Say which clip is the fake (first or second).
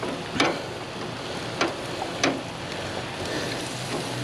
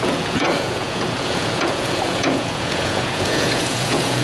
second